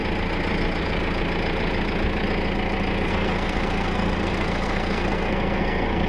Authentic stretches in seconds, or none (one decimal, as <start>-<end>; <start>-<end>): 0.0-3.1